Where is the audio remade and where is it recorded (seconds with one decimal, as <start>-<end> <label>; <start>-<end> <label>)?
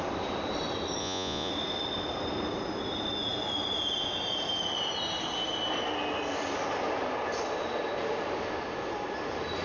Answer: 0.0-1.0 recorded; 1.0-1.5 remade; 1.5-9.6 recorded